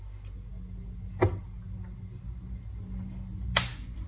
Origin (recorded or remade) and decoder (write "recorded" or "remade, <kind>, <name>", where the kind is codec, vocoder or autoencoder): recorded